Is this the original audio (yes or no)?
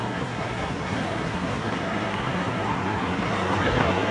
no